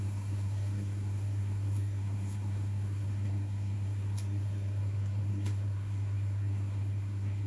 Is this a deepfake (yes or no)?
yes